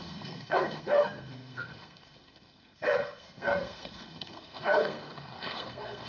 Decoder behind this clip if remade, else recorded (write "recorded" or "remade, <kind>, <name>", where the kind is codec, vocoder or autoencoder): remade, codec, SNAC